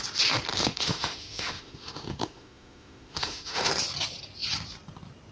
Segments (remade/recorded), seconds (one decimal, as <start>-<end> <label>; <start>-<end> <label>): 0.0-0.5 recorded; 0.5-3.7 remade; 3.7-5.3 recorded